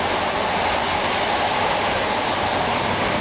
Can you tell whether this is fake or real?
real